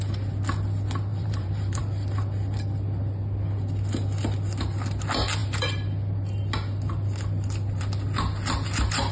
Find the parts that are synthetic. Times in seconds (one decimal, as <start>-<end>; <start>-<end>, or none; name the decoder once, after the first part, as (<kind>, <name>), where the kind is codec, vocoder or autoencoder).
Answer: 1.1-1.8 (vocoder, BigVGAN v2)